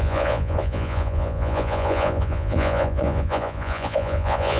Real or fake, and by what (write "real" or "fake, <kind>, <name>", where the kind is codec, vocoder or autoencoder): fake, vocoder, Vocos